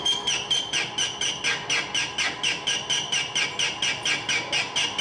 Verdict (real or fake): real